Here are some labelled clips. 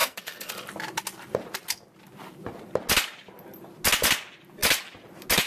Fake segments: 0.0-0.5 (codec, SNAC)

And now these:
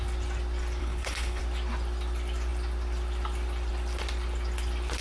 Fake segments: 0.8-1.4 (codec, HILCodec)

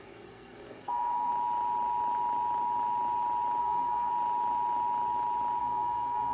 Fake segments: 0.0-1.3 (codec, SNAC); 3.6-4.1; 5.6-6.3